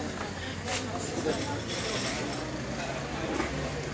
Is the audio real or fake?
real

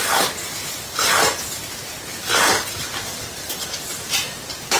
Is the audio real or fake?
fake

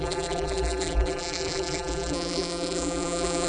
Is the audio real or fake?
fake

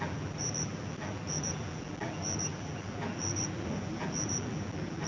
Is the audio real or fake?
fake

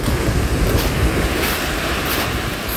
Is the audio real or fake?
real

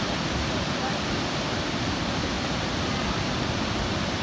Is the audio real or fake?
fake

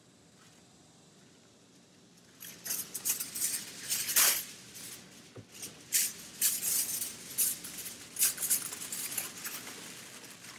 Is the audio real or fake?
real